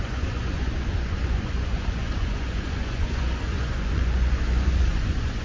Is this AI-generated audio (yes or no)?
yes